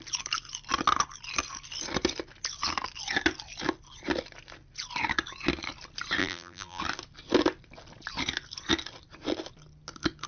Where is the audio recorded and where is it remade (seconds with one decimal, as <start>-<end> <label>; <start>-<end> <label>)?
0.0-6.2 recorded; 6.2-6.8 remade; 6.8-10.3 recorded